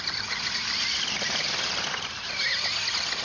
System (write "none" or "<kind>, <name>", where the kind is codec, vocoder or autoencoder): none